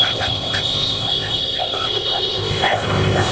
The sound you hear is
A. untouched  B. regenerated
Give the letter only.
B